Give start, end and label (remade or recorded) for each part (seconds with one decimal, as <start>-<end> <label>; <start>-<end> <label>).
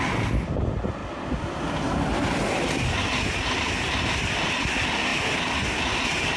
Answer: 0.0-6.4 recorded